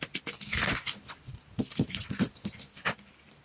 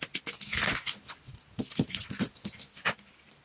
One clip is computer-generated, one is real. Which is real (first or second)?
second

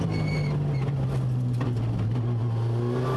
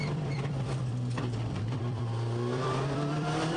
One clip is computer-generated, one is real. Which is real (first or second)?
first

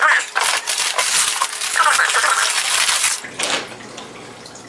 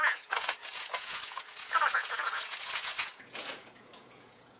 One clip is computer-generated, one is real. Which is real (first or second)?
first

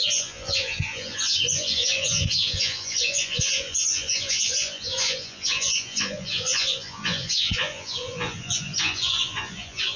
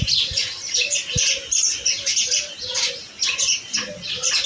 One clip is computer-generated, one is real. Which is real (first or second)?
second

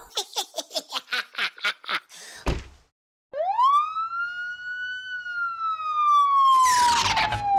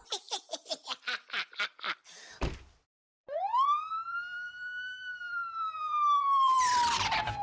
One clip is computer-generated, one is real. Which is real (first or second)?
first